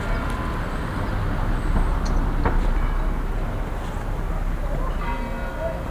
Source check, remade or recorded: recorded